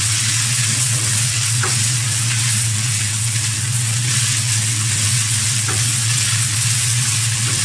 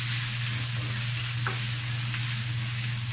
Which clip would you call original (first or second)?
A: second